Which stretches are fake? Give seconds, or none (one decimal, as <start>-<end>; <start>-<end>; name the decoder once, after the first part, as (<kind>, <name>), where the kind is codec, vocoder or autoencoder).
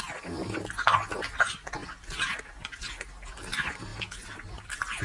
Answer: none